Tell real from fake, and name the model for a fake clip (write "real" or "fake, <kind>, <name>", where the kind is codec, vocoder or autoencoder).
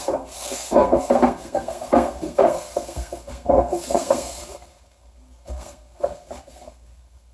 fake, codec, SNAC